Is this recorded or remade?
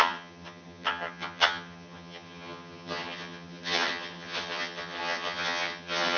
remade